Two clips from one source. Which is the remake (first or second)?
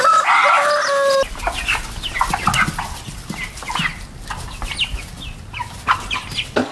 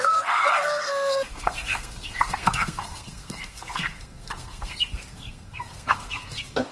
second